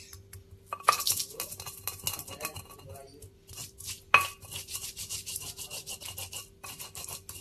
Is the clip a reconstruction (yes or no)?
no